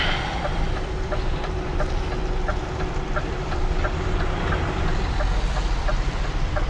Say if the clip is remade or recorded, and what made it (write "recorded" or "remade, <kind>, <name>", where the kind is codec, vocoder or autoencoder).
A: remade, vocoder, BigVGAN v2